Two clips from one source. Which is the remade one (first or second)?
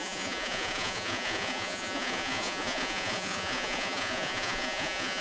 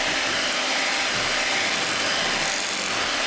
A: first